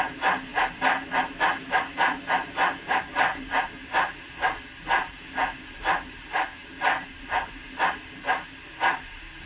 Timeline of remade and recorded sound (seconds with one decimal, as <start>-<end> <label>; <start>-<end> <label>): 0.0-9.5 recorded